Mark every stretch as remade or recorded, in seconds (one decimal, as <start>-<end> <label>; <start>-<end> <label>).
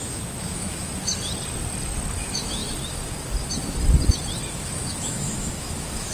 0.0-1.1 remade; 1.1-2.2 recorded; 2.2-2.6 remade; 2.6-4.5 recorded; 4.5-6.1 remade